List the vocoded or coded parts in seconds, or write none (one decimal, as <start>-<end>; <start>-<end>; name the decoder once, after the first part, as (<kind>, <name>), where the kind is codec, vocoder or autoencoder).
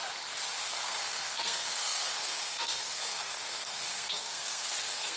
0.6-5.2 (codec, SNAC)